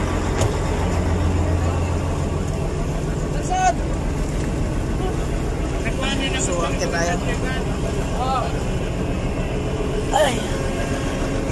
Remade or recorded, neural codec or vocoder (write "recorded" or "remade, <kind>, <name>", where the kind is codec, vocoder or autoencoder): recorded